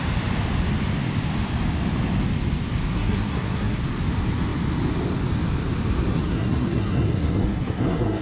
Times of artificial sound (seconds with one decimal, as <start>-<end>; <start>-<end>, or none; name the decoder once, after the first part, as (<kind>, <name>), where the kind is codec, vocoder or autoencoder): 2.9-3.8 (codec, SNAC); 6.1-8.2